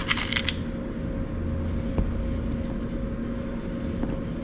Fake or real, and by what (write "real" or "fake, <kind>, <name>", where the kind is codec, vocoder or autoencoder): real